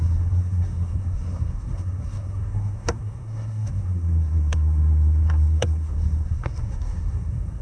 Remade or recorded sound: remade